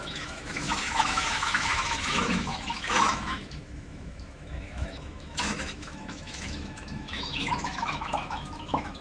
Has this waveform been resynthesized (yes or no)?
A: yes